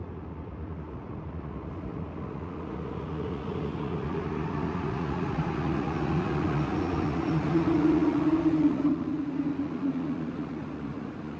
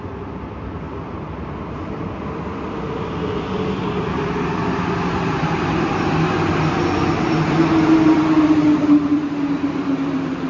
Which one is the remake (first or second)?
first